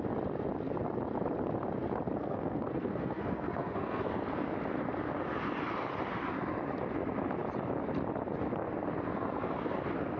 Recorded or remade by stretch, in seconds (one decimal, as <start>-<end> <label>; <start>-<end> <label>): 0.0-2.2 recorded; 2.2-4.1 remade; 4.1-10.2 recorded